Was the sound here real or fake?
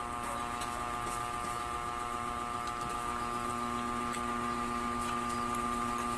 real